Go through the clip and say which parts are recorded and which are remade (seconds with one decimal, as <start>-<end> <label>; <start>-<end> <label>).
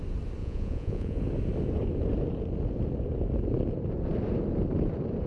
0.0-0.4 recorded; 0.4-1.2 remade; 1.2-5.3 recorded